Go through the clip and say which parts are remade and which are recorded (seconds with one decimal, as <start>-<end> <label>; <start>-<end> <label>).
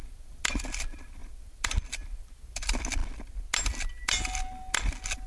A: 0.0-5.3 recorded